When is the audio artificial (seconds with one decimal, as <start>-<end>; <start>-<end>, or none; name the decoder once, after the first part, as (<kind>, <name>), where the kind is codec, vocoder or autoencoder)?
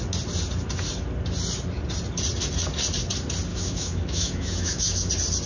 3.5-5.1 (autoencoder, DAC-VAE)